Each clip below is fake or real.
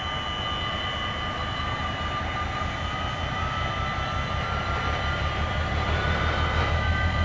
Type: real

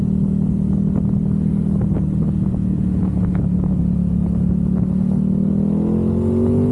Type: real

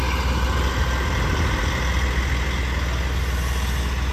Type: real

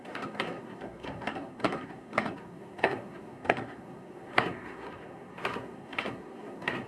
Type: fake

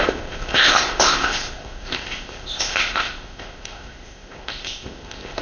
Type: fake